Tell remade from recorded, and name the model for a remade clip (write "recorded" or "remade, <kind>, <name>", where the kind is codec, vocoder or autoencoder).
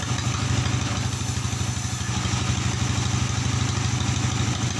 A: recorded